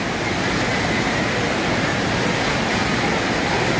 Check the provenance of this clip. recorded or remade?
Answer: recorded